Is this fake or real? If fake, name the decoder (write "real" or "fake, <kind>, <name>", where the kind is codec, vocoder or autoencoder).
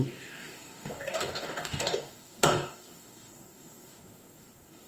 fake, codec, DAC